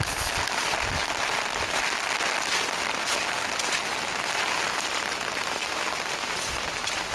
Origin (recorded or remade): recorded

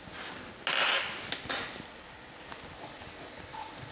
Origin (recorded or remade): recorded